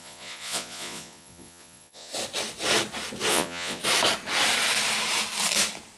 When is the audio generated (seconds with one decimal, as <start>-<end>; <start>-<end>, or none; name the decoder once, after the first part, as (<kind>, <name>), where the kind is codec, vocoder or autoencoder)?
0.0-2.1 (vocoder, Vocos); 3.3-3.8